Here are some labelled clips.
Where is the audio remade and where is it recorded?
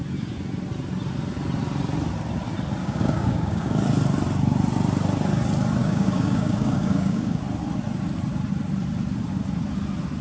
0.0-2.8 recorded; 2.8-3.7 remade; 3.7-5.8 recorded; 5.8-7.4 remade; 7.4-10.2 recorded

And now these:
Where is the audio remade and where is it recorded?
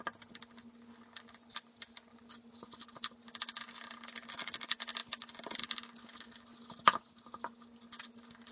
0.0-8.5 recorded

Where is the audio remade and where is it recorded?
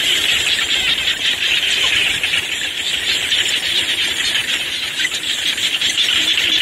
0.0-6.6 recorded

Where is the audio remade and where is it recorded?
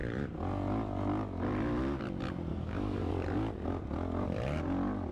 0.0-2.5 recorded; 2.5-3.1 remade; 3.1-5.1 recorded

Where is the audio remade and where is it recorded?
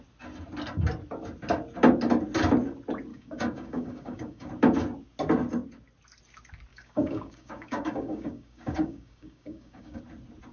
0.0-3.1 recorded; 3.1-4.5 remade; 4.5-6.7 recorded; 6.7-10.0 remade; 10.0-10.5 recorded